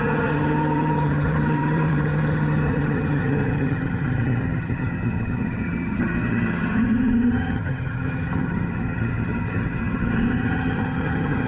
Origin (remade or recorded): remade